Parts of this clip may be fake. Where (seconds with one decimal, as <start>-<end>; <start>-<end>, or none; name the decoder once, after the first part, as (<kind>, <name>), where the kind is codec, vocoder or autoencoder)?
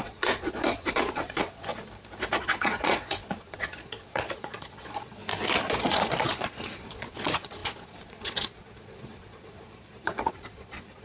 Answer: 0.0-1.8 (vocoder, Vocos); 2.4-5.2; 5.7-11.0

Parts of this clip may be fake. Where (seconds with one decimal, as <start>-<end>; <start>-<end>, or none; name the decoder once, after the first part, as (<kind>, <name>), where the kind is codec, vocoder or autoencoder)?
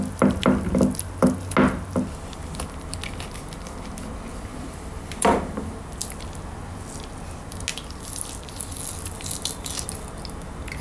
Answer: 4.5-5.7 (vocoder, BigVGAN v2); 7.7-8.8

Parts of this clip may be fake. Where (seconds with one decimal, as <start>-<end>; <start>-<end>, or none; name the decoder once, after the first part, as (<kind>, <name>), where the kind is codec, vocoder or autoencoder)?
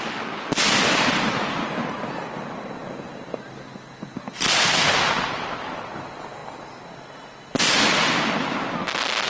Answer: none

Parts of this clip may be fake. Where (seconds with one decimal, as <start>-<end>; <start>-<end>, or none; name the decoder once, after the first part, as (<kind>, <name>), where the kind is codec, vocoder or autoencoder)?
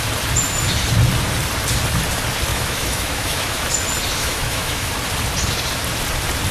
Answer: 2.5-3.7 (autoencoder, DAC-VAE); 4.2-4.9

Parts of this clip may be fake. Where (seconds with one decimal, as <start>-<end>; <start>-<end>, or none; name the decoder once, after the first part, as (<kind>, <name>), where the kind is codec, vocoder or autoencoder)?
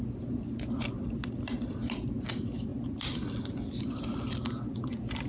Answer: none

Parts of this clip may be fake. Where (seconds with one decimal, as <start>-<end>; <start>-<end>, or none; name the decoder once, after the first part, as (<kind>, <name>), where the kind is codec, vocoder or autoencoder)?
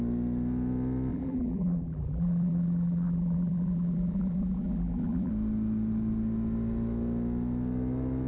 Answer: 1.1-5.3 (vocoder, BigVGAN v2)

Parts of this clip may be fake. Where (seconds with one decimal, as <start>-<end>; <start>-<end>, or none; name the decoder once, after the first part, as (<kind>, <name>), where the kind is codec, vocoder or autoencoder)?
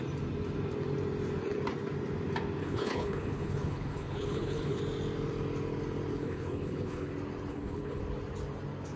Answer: 2.6-4.8 (codec, HILCodec); 6.1-7.1; 7.5-8.0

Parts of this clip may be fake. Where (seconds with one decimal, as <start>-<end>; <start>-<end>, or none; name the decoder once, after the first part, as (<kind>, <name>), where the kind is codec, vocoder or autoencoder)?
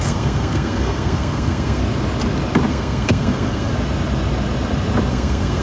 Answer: 0.0-1.8 (codec, SNAC); 2.7-3.7; 5.1-5.6